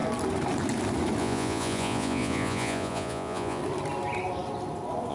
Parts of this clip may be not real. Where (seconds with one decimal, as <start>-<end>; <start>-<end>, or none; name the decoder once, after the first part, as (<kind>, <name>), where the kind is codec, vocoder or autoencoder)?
1.2-3.6 (vocoder, Vocos)